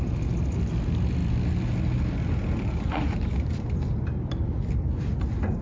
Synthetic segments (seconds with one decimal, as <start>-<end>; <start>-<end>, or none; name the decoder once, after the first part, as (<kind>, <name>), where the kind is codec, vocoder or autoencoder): none